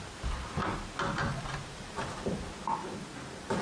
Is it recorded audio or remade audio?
recorded